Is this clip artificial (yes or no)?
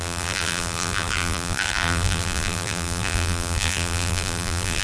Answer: yes